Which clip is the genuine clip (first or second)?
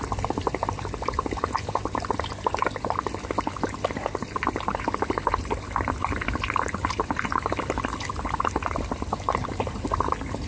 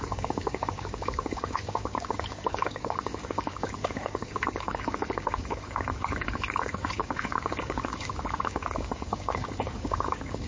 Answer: first